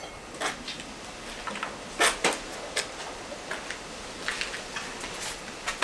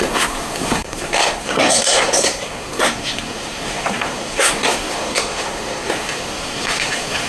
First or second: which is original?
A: first